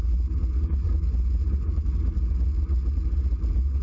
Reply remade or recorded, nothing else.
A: recorded